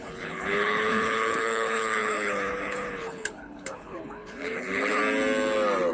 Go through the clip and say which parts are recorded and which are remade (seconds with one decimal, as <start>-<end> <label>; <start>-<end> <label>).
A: 0.0-5.0 remade; 5.0-5.9 recorded